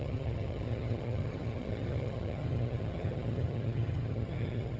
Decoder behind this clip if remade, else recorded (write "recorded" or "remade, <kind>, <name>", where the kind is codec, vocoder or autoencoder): remade, vocoder, HiFi-GAN